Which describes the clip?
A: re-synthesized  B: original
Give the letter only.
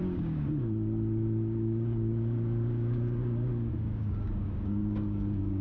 A